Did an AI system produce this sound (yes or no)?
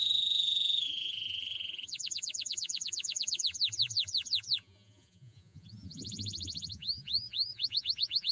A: yes